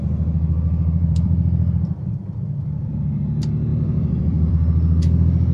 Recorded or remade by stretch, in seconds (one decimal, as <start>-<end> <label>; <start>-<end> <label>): 0.0-1.0 recorded; 1.0-3.1 remade; 3.1-3.7 recorded; 3.7-4.5 remade; 4.5-5.5 recorded